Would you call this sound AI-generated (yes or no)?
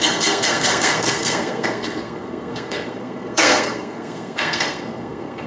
yes